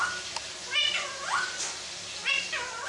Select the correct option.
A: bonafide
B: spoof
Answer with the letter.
A